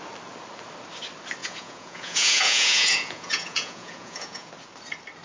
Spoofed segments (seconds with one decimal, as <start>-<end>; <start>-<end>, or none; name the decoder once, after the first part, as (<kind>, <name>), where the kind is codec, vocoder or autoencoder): 1.4-4.5 (vocoder, Vocos)